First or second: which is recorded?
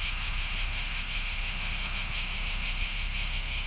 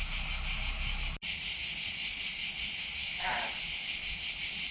second